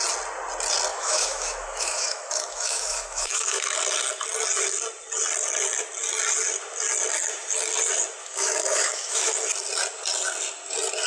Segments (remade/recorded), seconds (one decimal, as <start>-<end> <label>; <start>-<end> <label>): 0.0-0.9 recorded; 0.9-3.8 remade; 3.8-8.2 recorded; 8.2-9.3 remade; 9.3-11.1 recorded